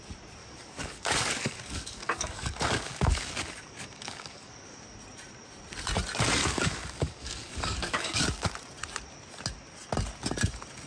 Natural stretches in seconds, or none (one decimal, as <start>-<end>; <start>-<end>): 0.0-0.4; 4.8-6.4; 8.5-10.9